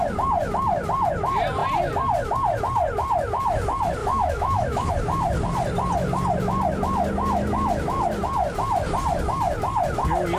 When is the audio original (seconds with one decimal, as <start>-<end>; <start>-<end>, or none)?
0.0-4.0; 4.9-10.4